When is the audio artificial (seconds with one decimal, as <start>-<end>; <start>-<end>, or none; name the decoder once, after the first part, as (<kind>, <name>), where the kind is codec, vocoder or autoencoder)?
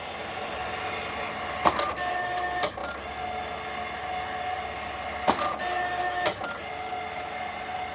none